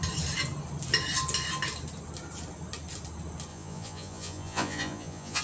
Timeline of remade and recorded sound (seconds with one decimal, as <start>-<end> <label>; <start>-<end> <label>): 0.0-3.5 recorded; 3.5-5.4 remade